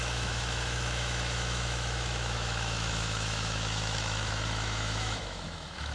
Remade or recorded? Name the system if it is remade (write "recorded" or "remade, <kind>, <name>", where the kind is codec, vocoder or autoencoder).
remade, autoencoder, DAC-VAE